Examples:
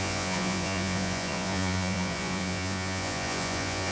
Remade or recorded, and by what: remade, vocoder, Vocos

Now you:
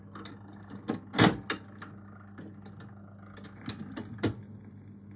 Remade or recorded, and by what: recorded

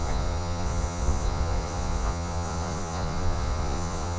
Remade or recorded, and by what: remade, vocoder, Vocos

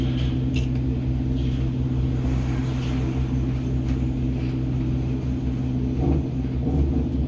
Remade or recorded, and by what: recorded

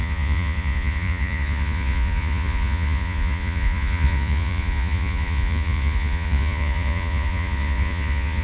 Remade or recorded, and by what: remade, vocoder, Vocos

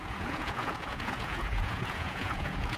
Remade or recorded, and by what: remade, vocoder, Vocos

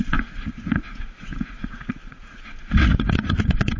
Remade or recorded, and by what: remade, vocoder, Vocos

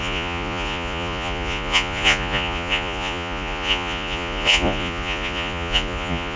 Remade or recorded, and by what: remade, vocoder, Vocos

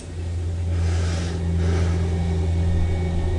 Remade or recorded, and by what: recorded